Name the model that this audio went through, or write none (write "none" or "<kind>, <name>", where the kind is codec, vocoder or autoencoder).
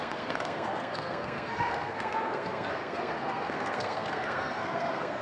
codec, SNAC